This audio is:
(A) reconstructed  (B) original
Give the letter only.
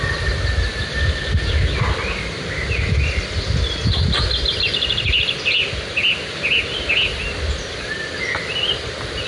B